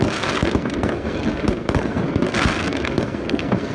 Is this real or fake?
fake